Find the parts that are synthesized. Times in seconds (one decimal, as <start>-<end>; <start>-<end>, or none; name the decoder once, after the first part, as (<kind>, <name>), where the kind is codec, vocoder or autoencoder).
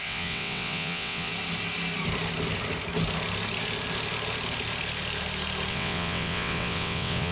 0.0-1.3 (vocoder, WaveNeXt); 5.7-7.3